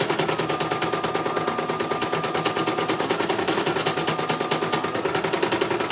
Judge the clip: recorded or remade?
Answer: recorded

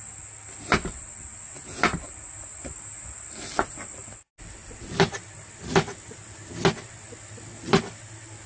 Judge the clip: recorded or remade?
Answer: recorded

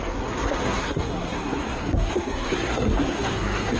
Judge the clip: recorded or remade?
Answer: remade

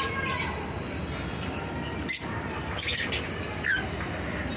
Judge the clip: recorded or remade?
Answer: recorded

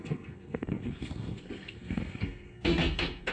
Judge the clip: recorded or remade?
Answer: remade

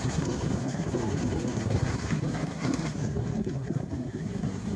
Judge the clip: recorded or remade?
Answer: remade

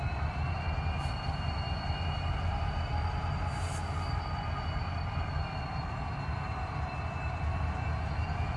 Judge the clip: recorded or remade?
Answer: recorded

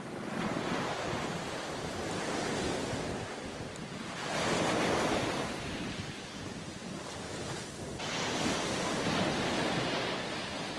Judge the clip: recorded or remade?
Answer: recorded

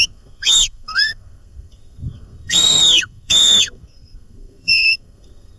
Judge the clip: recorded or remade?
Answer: remade